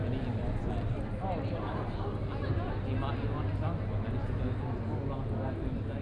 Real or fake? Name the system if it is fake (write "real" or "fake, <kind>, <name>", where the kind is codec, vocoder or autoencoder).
real